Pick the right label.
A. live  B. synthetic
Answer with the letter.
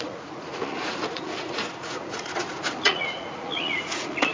B